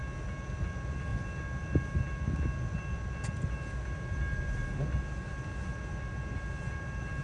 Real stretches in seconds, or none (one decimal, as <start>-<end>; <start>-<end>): 0.0-7.2